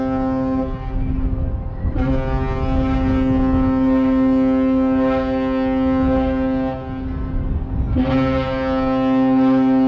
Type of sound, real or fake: real